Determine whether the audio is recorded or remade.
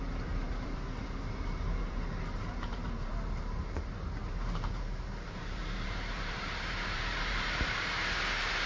remade